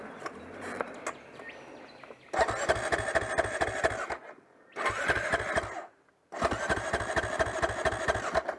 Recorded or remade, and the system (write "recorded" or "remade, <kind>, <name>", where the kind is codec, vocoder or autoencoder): recorded